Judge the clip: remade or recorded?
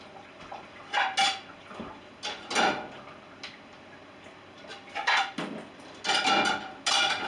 recorded